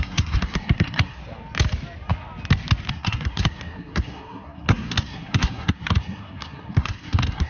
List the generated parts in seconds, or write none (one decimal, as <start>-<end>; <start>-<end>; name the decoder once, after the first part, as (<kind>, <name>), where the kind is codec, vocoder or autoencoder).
0.0-1.2 (codec, SNAC); 2.9-7.5